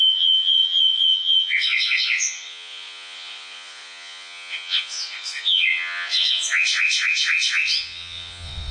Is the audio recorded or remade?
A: remade